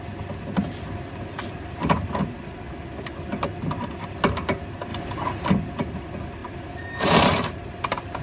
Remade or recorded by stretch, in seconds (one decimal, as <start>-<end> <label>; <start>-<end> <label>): 0.0-6.4 recorded; 6.4-8.2 remade